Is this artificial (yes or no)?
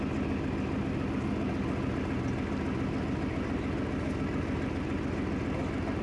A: no